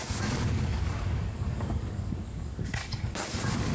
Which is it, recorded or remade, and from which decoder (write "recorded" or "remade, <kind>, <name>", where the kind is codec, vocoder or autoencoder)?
remade, codec, DAC